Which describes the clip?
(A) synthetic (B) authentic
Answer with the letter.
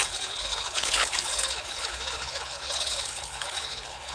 A